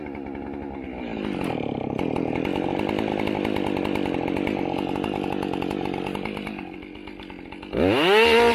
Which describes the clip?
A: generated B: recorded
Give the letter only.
B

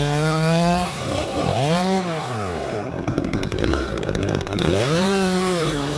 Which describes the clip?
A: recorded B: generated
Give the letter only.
B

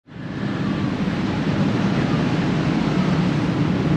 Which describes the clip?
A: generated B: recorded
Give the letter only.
B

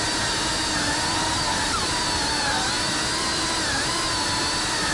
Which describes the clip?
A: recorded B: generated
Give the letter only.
A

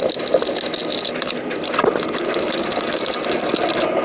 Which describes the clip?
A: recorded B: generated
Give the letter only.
A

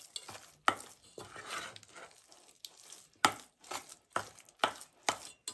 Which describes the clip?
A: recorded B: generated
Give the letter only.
A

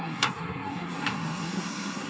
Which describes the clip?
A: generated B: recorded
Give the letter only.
A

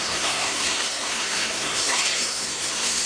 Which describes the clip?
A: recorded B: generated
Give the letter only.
B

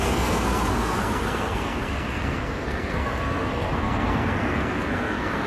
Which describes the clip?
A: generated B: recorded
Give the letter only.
A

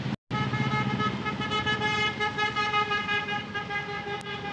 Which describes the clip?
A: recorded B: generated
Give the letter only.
A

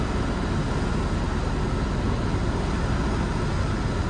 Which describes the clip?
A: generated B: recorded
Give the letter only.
B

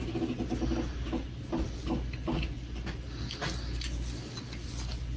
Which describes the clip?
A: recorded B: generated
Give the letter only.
A